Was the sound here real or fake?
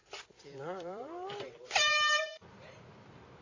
fake